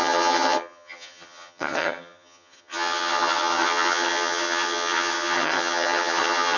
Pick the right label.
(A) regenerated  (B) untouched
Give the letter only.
A